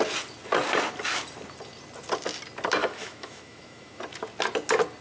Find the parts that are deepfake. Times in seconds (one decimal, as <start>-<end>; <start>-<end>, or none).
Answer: 2.8-4.0